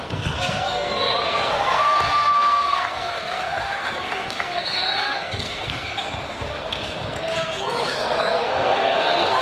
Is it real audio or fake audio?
fake